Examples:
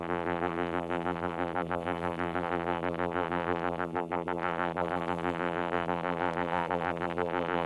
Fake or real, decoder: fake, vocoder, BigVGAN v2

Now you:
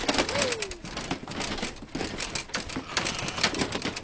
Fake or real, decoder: real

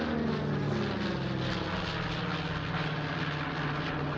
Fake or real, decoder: real